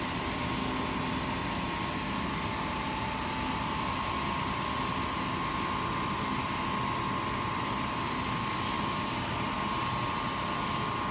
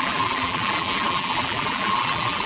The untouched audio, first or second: first